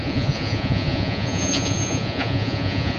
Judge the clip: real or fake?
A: fake